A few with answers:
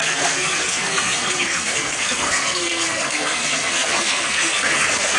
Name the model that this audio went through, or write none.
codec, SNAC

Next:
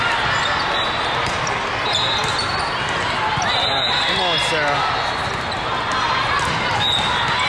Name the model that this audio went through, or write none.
none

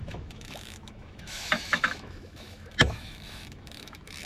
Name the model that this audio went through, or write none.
autoencoder, DAC-VAE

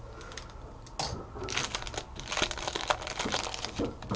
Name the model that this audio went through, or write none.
none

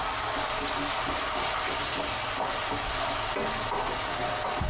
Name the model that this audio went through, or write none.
none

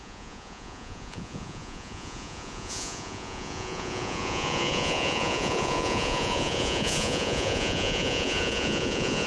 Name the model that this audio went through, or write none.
vocoder, Vocos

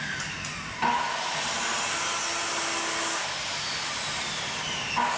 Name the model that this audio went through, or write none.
none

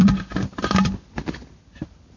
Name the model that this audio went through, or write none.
none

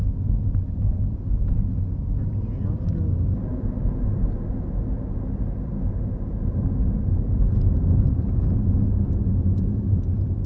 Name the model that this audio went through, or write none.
none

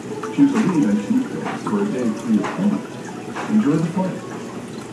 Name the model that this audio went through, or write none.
none